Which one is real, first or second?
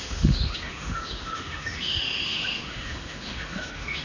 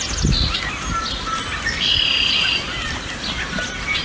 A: second